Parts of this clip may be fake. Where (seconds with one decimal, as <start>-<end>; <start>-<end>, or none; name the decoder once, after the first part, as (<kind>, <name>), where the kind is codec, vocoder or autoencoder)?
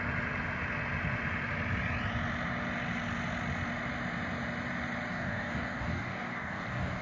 5.1-7.0 (codec, DAC)